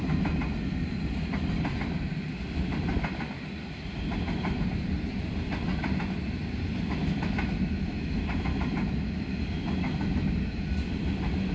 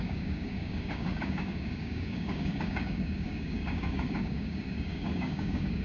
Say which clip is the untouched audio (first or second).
first